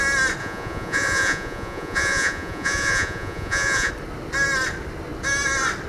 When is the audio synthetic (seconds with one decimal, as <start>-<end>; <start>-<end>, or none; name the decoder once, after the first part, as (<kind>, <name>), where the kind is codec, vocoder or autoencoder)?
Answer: 0.4-3.9 (vocoder, Vocos)